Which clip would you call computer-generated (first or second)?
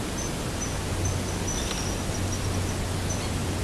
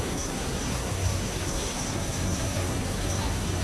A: second